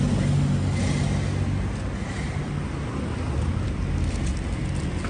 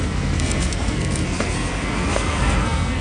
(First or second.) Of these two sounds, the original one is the first